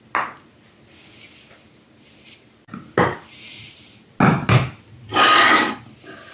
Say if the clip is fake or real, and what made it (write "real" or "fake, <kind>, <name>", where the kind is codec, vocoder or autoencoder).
real